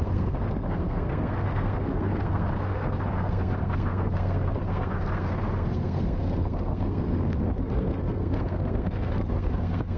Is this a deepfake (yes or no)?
yes